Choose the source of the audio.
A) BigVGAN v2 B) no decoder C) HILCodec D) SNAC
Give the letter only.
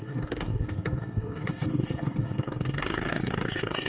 D